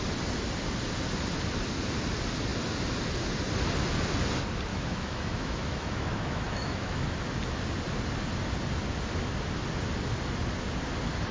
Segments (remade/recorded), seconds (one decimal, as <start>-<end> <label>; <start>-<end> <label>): 0.0-4.7 recorded; 4.7-7.0 remade; 7.0-11.3 recorded